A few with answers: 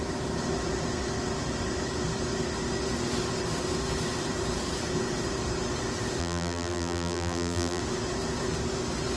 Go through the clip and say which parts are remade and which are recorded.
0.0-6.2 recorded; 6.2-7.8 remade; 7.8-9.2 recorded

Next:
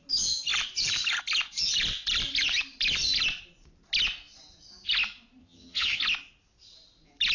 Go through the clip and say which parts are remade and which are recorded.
0.0-5.4 recorded; 5.4-6.0 remade; 6.0-7.3 recorded

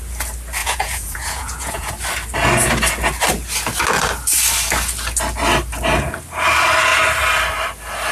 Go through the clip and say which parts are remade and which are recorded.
0.0-0.6 recorded; 0.6-1.9 remade; 1.9-8.1 recorded

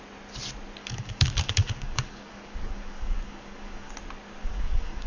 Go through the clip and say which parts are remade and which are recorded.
0.0-0.8 recorded; 0.8-3.9 remade; 3.9-4.4 recorded; 4.4-5.1 remade